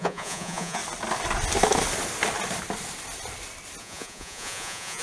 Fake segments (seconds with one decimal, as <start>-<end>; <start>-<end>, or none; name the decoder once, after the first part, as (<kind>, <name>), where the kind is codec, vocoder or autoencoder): 0.0-0.8 (vocoder, Vocos); 3.8-5.0